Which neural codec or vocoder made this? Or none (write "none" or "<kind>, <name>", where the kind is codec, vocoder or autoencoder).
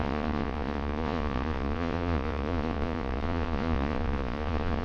vocoder, Vocos